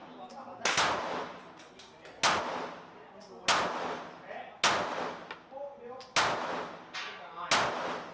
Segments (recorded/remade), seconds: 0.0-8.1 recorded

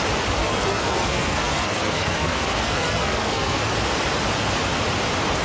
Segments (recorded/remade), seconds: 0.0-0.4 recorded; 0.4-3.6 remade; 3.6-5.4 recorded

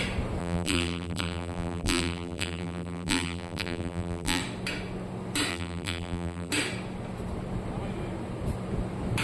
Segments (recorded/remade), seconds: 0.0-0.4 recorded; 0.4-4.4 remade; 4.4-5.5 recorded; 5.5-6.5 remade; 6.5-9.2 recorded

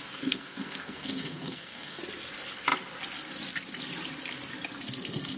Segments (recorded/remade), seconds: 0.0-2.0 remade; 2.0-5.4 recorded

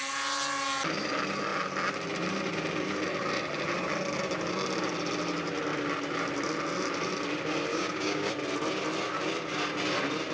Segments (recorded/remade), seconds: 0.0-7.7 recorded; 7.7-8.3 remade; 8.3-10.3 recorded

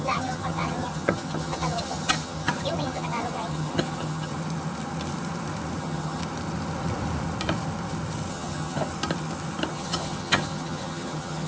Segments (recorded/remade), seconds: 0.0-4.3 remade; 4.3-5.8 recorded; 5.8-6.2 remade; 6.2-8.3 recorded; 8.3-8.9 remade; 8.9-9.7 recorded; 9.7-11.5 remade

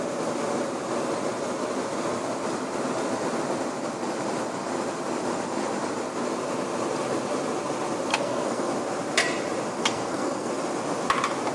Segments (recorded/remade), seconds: 0.0-8.1 recorded; 8.1-8.7 remade; 8.7-9.8 recorded; 9.8-10.5 remade; 10.5-11.5 recorded

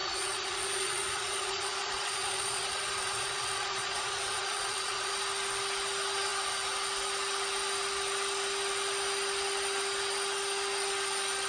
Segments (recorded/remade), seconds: 0.0-5.1 remade; 5.1-11.5 recorded